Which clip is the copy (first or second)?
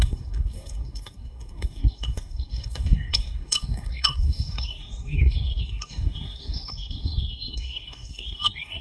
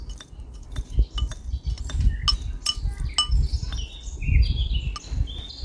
first